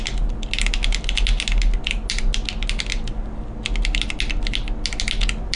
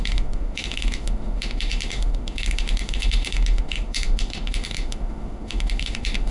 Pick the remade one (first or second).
second